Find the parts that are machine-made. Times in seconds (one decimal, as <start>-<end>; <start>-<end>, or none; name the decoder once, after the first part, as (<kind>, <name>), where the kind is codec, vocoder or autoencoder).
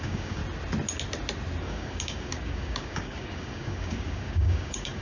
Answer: 0.0-0.4 (codec, DAC); 1.6-5.0